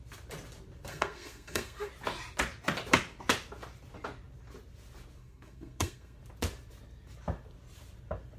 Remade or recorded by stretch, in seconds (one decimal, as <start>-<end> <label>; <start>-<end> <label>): 0.0-0.9 recorded; 0.9-1.9 remade; 1.9-5.2 recorded; 5.2-6.2 remade; 6.2-8.4 recorded